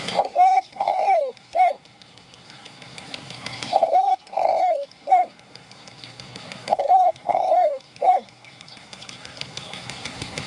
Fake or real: fake